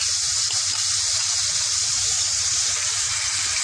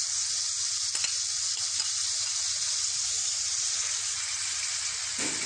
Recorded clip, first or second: second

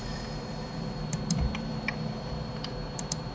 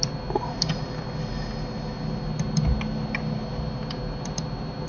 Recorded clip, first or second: second